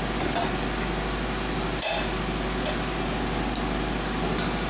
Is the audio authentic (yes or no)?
yes